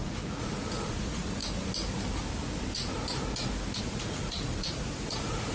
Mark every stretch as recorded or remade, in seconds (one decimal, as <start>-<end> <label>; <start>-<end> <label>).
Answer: 0.0-1.4 remade; 1.4-3.8 recorded; 3.8-5.5 remade